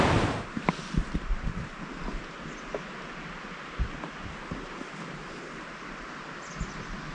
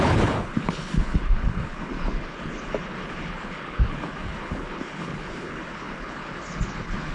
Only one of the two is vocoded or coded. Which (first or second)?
second